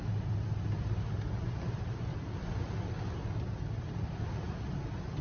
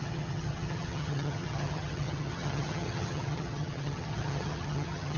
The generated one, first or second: second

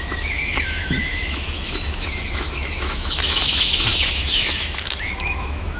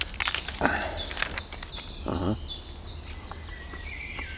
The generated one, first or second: first